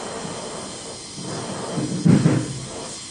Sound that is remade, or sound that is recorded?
recorded